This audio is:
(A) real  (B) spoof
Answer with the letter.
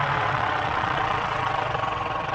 B